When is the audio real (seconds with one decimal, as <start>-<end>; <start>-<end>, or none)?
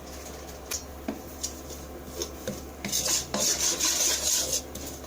0.0-5.1